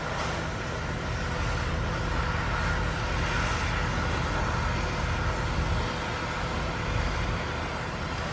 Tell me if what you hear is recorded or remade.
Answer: recorded